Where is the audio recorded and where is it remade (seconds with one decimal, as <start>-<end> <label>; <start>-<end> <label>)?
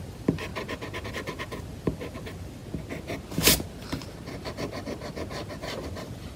0.0-0.5 remade; 0.5-1.1 recorded; 1.1-2.6 remade; 2.6-5.6 recorded; 5.6-6.4 remade